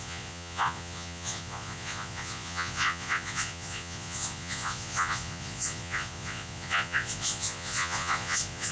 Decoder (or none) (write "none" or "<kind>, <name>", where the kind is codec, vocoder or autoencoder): vocoder, Vocos